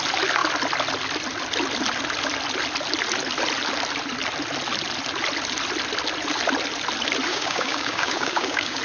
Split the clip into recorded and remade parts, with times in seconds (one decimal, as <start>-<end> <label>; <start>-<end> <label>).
0.0-7.3 recorded; 7.3-8.8 remade